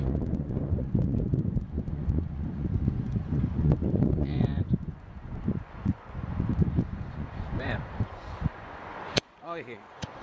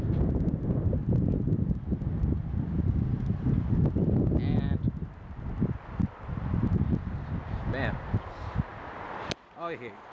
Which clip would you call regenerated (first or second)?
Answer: first